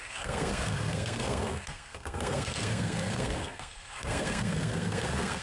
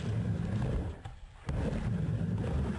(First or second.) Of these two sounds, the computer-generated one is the first